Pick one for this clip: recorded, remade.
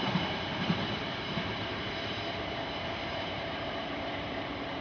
remade